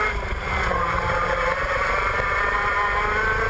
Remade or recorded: remade